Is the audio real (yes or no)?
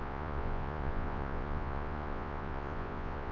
no